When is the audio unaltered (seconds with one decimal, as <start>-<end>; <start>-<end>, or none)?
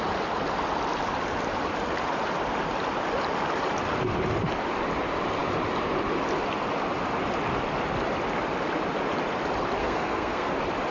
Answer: 0.0-9.8; 10.5-10.9